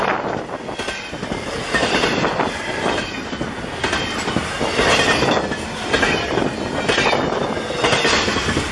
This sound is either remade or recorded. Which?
recorded